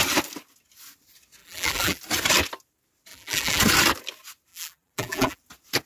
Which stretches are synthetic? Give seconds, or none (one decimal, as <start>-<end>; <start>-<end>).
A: 1.4-2.0; 3.1-3.6; 4.5-5.4